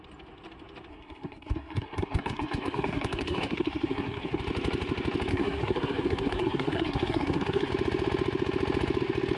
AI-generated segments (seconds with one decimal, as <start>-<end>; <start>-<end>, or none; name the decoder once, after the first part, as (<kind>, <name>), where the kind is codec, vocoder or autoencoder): 0.9-4.4 (codec, SNAC); 5.3-7.7